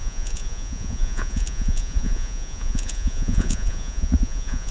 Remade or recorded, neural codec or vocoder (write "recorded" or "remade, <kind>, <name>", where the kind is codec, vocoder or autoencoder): remade, vocoder, Vocos